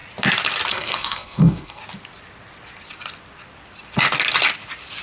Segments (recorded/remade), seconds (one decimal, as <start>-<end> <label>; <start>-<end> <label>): 0.0-0.7 recorded; 0.7-1.8 remade; 1.8-5.0 recorded

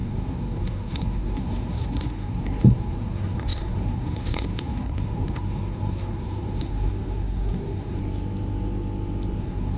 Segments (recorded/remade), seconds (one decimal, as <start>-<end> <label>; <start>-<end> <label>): 0.0-8.0 remade; 8.0-9.4 recorded; 9.4-9.8 remade

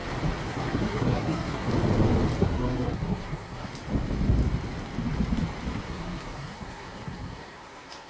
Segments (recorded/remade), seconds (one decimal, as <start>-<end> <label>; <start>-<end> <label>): 0.0-0.5 recorded; 0.5-1.7 remade; 1.7-2.4 recorded; 2.4-3.7 remade; 3.7-5.8 recorded; 5.8-8.1 remade

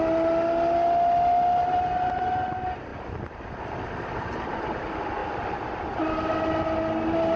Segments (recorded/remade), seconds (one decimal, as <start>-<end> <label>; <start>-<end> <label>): 0.0-7.4 recorded

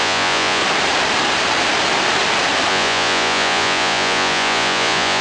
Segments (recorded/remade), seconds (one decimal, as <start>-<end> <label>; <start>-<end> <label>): 0.0-0.6 remade; 0.6-2.7 recorded; 2.7-5.2 remade